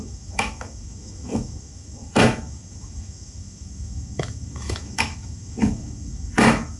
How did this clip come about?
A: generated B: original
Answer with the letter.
A